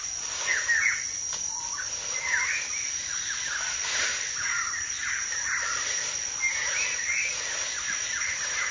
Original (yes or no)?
yes